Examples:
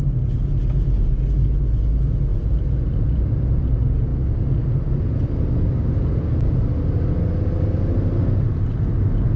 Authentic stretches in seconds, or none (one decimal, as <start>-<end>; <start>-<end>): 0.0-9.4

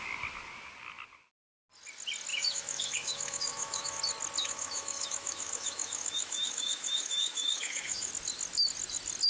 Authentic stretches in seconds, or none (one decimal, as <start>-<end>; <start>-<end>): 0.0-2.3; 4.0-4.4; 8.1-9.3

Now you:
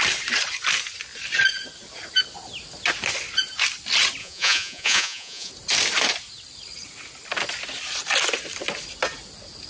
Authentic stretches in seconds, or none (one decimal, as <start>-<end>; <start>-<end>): 0.0-4.2; 5.5-9.7

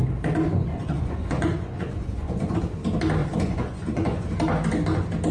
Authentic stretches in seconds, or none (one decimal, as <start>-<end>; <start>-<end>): 0.0-0.7; 2.6-3.2; 4.3-5.3